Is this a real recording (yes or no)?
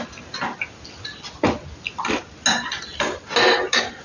yes